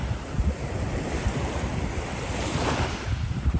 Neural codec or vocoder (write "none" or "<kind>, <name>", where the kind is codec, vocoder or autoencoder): none